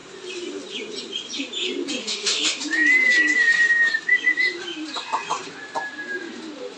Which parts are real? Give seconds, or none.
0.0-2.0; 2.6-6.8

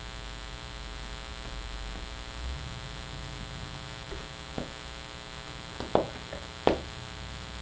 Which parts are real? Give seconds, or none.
0.0-7.6

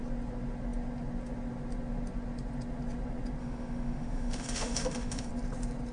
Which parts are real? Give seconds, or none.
0.0-3.4; 5.3-5.9

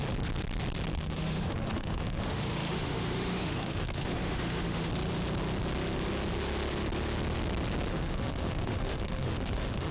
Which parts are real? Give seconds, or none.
0.0-0.9; 4.9-7.9